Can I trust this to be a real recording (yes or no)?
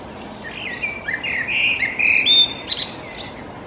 yes